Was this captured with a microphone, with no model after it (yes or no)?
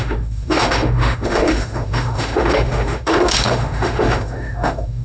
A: no